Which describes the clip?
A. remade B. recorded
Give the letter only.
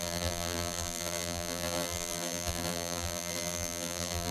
A